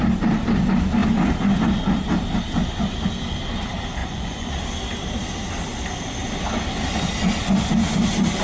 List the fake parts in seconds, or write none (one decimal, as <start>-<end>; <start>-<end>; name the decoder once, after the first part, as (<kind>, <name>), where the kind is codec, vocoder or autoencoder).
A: 4.0-4.5 (vocoder, Vocos)